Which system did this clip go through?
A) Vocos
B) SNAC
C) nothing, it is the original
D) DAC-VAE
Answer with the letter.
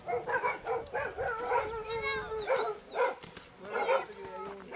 C